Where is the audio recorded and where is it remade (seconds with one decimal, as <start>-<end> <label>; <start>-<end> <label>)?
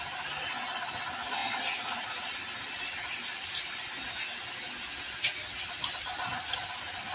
0.0-7.1 recorded